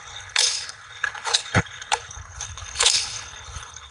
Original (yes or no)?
no